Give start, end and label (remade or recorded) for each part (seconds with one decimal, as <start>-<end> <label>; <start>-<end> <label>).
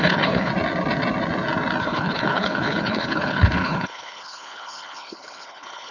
0.0-0.5 remade; 0.5-1.8 recorded; 1.8-5.9 remade